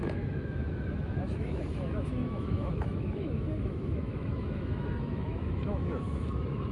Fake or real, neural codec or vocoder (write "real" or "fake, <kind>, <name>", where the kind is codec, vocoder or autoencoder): fake, autoencoder, DAC-VAE